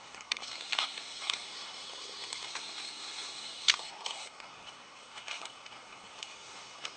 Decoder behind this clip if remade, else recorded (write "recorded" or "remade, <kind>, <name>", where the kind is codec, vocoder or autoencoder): remade, codec, SNAC